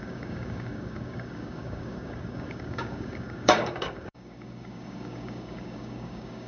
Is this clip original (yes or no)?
no